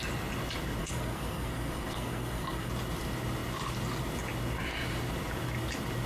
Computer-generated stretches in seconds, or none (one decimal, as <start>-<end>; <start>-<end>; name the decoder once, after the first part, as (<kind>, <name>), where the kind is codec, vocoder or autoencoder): 0.8-2.7 (codec, SNAC)